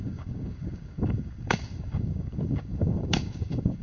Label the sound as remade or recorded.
remade